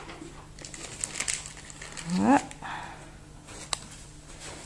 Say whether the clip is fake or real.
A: real